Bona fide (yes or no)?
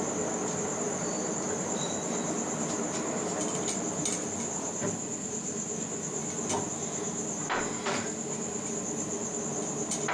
yes